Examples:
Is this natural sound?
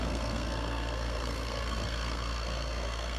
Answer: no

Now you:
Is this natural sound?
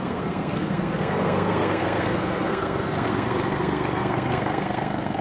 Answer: no